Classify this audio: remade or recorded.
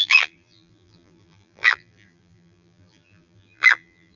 remade